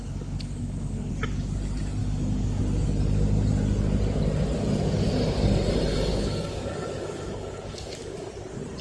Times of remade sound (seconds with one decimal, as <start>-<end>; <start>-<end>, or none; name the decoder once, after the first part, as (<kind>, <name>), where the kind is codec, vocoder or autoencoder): 0.0-1.1 (codec, DAC); 2.0-2.6; 6.1-8.3